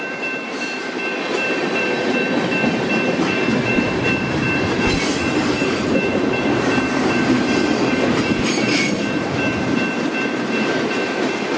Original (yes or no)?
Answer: no